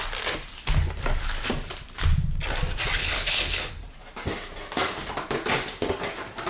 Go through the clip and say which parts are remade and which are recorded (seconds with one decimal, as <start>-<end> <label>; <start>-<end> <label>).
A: 0.0-3.0 recorded; 3.0-3.7 remade; 3.7-6.5 recorded